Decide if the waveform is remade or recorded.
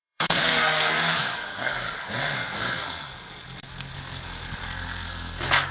remade